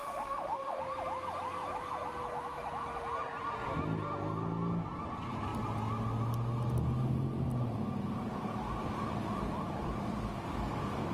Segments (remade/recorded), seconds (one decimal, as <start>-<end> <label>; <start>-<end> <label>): 0.0-0.8 remade; 0.8-11.1 recorded